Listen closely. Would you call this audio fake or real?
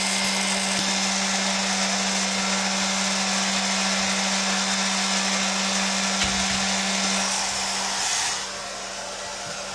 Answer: real